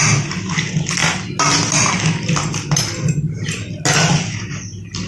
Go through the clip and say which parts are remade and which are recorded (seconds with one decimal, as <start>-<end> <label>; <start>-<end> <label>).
0.0-5.1 recorded